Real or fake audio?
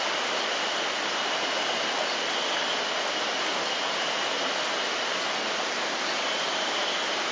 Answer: real